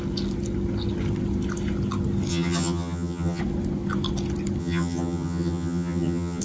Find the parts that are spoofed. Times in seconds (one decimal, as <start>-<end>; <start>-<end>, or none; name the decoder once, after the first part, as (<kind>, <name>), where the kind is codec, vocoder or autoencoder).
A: 2.3-3.4 (vocoder, HiFi-GAN); 4.6-6.4